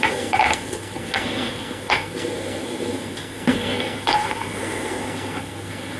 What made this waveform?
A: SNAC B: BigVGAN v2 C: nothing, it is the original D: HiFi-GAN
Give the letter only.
A